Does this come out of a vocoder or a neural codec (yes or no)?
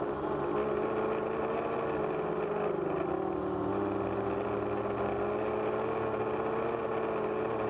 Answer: no